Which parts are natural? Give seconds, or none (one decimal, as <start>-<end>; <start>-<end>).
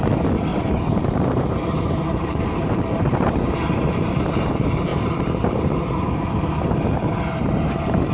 0.0-0.5; 4.5-4.9; 6.3-8.1